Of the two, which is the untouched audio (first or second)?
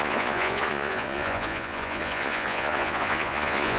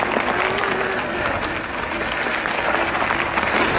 second